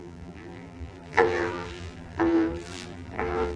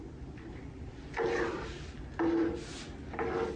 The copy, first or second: first